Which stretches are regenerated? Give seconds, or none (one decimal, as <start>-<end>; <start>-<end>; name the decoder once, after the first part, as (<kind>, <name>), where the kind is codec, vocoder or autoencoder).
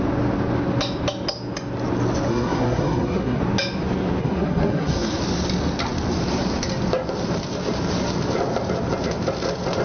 2.3-3.4 (codec, SNAC); 4.2-5.2